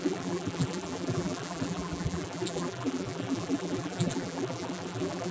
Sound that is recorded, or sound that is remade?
remade